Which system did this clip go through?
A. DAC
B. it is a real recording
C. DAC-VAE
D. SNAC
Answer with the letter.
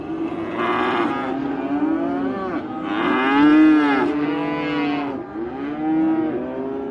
B